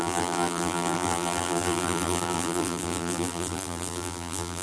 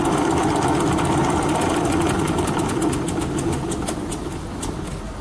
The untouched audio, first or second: second